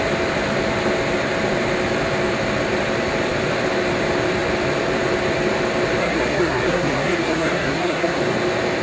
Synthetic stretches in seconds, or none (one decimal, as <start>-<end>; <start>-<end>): 6.0-8.2